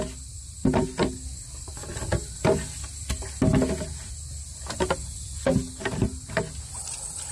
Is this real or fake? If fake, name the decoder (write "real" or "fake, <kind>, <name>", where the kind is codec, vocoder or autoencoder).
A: real